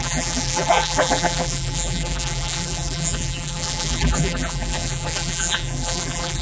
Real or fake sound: fake